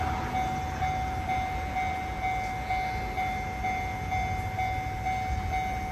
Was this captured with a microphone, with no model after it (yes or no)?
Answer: yes